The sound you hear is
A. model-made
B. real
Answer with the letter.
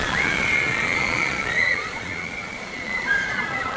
A